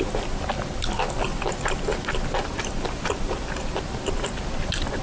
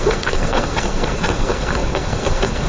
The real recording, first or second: first